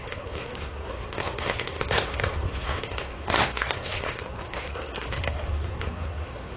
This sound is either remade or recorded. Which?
remade